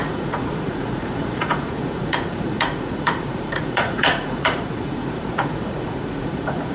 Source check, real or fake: fake